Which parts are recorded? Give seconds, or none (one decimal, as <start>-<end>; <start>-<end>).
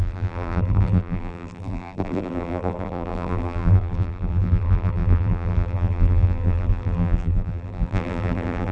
none